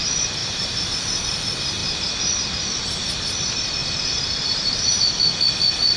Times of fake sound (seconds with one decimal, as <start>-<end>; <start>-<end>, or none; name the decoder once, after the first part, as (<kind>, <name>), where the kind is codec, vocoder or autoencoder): 0.4-0.9 (vocoder, BigVGAN v2); 3.8-5.1